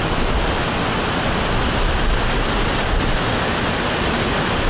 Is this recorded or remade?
recorded